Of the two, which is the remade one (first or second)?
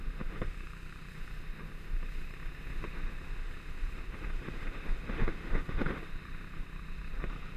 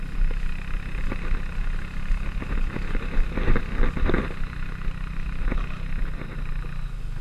first